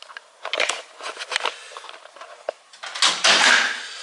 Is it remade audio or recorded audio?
recorded